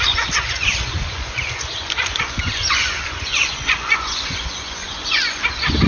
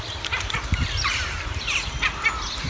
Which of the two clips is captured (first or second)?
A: second